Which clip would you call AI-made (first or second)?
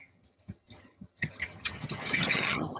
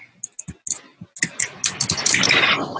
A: first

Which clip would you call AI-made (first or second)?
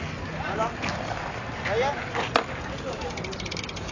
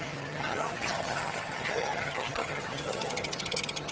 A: second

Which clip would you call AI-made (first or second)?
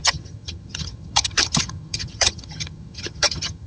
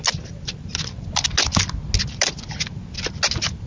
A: first